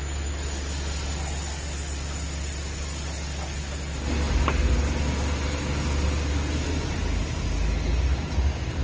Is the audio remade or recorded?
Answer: recorded